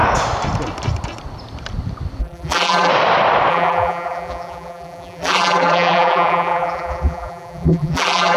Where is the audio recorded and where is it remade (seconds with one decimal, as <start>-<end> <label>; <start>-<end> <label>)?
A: 0.0-2.2 recorded; 2.2-2.9 remade; 2.9-3.5 recorded; 3.5-8.4 remade